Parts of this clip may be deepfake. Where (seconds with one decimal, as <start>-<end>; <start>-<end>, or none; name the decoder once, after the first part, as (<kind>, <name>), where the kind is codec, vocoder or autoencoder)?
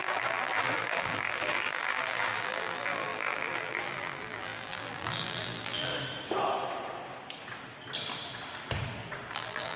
0.0-5.9 (vocoder, BigVGAN v2); 9.3-9.8